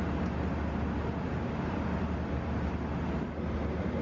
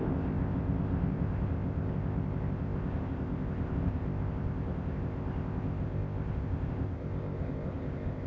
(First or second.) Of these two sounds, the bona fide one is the first